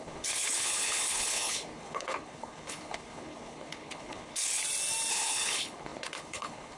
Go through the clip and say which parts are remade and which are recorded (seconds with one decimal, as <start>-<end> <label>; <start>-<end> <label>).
0.0-4.6 remade; 4.6-5.1 recorded; 5.1-6.8 remade